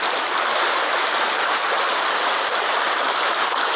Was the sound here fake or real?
real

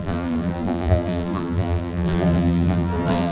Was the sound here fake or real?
fake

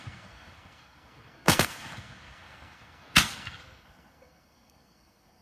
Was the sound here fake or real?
fake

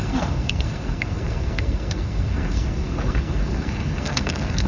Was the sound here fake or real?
fake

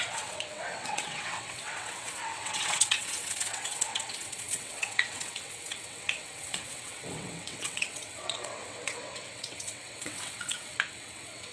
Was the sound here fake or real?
fake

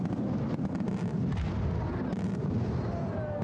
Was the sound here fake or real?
real